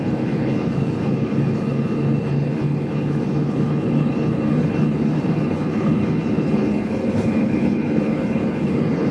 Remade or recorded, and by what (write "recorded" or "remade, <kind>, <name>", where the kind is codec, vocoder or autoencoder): remade, codec, HILCodec